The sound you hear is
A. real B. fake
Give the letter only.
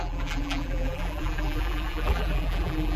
B